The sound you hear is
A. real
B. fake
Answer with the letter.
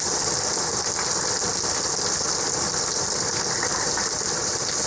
A